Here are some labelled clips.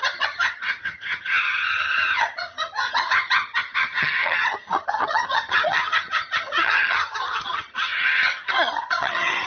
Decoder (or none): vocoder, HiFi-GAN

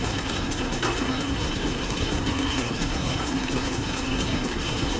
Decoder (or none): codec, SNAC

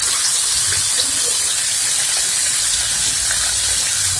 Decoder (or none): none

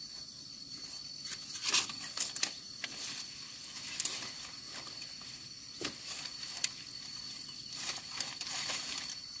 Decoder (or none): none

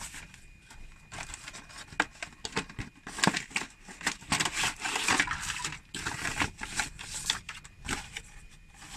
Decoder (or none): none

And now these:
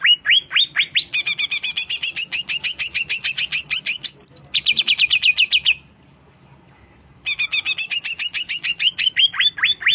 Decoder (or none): none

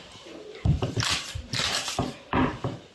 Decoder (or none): vocoder, BigVGAN v2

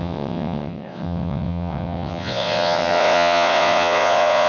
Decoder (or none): vocoder, WaveNeXt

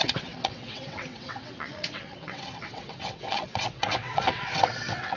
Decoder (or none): vocoder, WaveNeXt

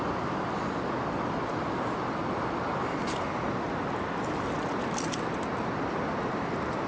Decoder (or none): none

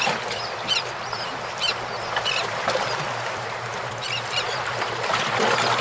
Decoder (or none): vocoder, BigVGAN v2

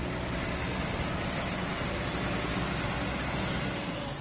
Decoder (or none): none